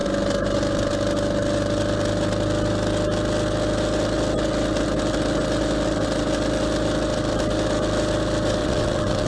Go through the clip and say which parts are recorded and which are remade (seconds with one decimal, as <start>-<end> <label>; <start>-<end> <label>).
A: 0.0-8.6 recorded; 8.6-9.3 remade